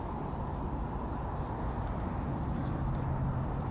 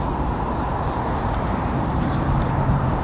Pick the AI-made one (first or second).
second